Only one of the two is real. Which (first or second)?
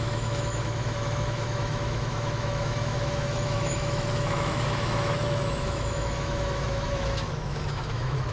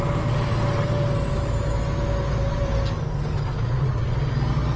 second